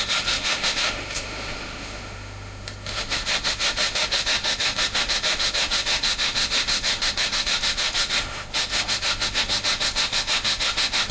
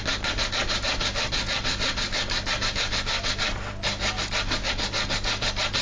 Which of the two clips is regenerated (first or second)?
first